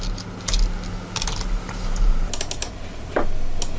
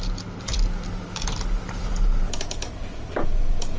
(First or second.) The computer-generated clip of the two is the second